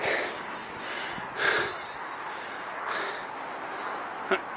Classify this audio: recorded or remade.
recorded